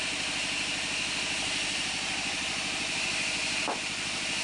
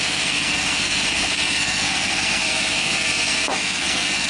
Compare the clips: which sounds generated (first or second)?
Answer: second